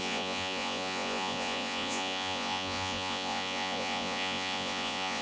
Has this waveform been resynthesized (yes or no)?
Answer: yes